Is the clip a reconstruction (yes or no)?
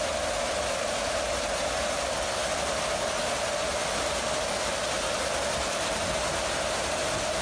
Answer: no